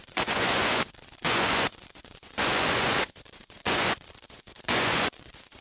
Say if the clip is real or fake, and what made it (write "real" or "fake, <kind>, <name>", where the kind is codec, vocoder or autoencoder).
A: fake, vocoder, Vocos